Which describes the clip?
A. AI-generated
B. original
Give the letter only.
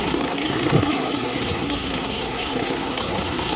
A